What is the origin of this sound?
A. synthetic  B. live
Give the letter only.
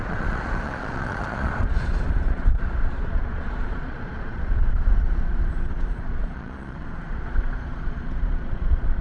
A